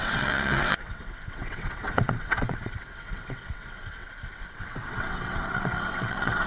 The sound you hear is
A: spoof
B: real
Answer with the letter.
A